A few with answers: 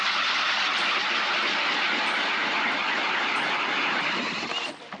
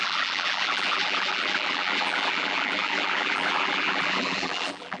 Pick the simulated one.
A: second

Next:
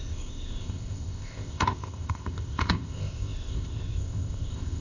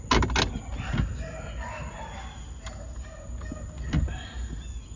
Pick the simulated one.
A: first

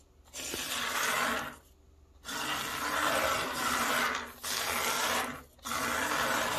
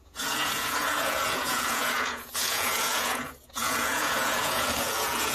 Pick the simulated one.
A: second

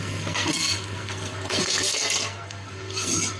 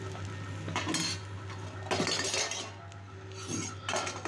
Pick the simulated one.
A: first